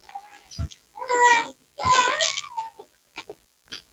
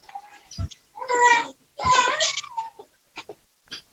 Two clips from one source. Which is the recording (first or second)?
second